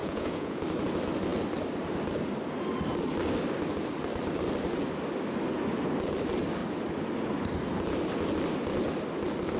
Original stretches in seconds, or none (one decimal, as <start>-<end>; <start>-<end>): 0.6-9.6